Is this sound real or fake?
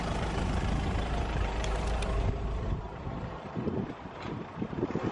fake